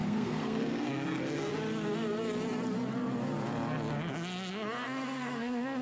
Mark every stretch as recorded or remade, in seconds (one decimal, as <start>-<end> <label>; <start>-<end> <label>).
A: 0.0-1.5 remade; 1.5-4.5 recorded; 4.5-5.8 remade